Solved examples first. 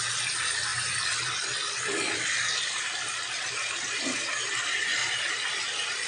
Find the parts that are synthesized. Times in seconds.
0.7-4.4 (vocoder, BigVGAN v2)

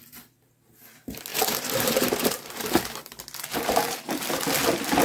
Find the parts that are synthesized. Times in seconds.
1.3-2.8 (vocoder, BigVGAN v2); 3.5-4.2

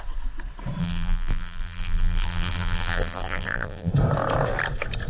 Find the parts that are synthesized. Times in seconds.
0.8-3.9 (vocoder, BigVGAN v2)

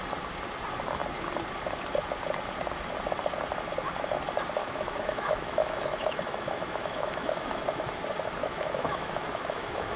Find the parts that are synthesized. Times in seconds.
4.6-8.0 (autoencoder, DAC-VAE); 8.4-10.0

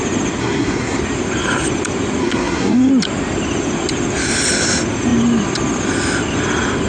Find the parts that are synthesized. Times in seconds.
0.4-1.0 (codec, SNAC); 2.2-2.9

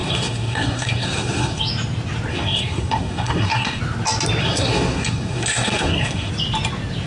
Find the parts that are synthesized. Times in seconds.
0.0-1.6 (codec, SNAC); 2.3-3.8; 4.4-6.3

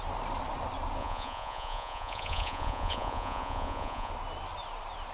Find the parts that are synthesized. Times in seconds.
1.0-4.1 (vocoder, Vocos)